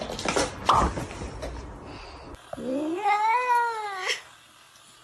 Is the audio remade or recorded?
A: recorded